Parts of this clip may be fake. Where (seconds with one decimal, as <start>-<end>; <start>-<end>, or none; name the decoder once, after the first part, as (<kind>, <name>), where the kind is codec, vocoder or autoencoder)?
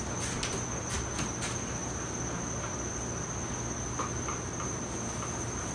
none